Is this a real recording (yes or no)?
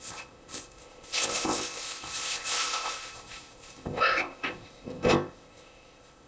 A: no